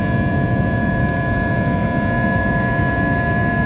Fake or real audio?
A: fake